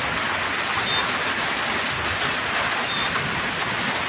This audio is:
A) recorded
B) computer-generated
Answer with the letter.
A